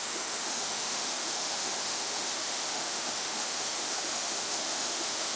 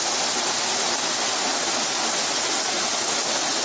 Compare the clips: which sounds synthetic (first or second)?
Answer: first